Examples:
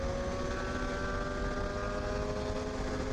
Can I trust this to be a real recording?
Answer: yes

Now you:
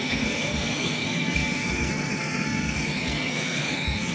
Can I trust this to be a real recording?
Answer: no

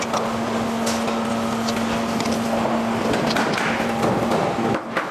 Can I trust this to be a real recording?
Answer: yes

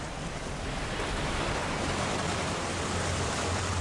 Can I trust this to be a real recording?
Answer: no